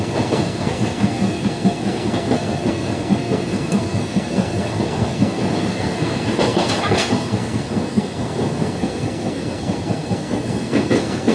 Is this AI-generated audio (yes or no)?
yes